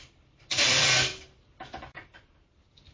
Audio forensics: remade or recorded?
remade